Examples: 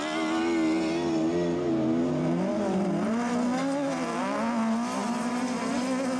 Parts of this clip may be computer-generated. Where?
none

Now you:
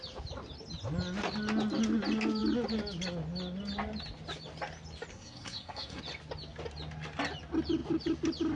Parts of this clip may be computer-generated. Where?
5.1-6.0 (codec, SNAC)

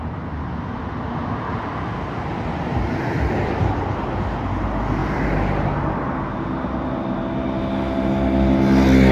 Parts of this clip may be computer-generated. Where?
none

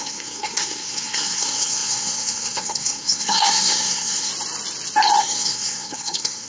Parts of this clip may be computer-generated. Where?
0.0-4.3 (codec, SNAC); 5.2-6.5